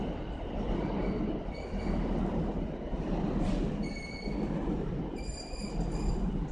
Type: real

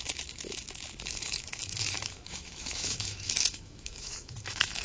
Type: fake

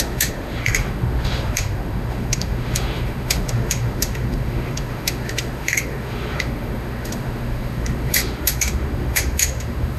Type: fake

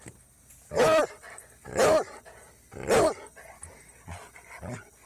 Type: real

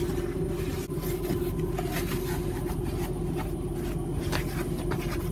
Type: real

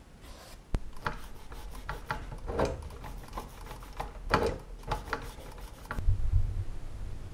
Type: real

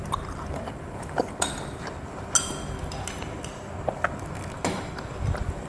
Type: real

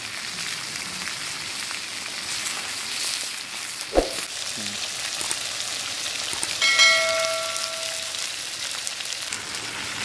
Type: real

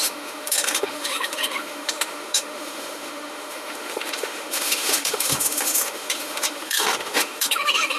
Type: fake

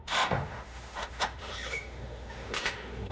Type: fake